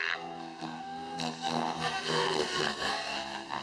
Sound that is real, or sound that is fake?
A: fake